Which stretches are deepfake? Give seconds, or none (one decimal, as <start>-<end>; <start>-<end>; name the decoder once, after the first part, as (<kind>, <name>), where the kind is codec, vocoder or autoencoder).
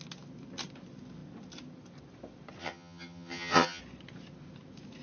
2.6-3.8 (vocoder, HiFi-GAN)